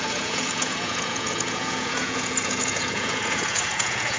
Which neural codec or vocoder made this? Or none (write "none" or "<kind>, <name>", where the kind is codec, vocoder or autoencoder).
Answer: vocoder, Vocos